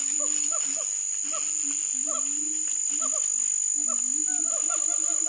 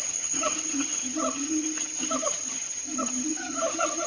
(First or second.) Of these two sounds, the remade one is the second